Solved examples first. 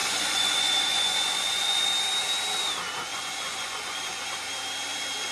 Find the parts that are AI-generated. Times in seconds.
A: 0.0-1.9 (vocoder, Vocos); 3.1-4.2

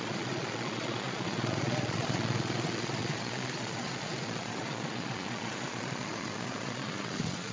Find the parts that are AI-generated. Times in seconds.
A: 0.0-7.5 (vocoder, Vocos)

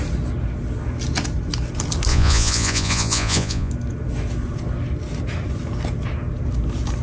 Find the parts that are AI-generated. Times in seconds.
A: 2.1-3.7 (vocoder, Vocos)

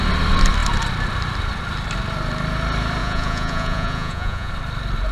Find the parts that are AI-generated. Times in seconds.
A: 3.0-4.5 (vocoder, Vocos)

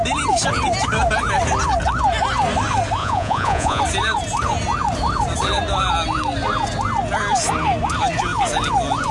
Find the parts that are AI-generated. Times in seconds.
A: 3.0-3.8 (vocoder, Vocos)

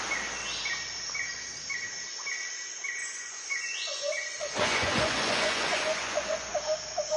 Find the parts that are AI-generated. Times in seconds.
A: 3.0-6.5 (vocoder, Vocos)